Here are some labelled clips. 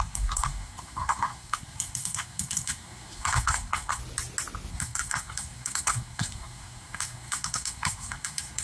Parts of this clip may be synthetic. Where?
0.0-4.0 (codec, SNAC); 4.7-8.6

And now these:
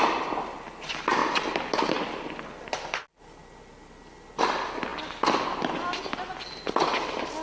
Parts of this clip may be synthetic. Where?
none

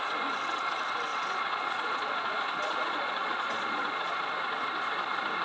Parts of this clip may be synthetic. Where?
1.1-4.3 (vocoder, Vocos)